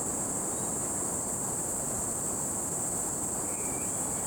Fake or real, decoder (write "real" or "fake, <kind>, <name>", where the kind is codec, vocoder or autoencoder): real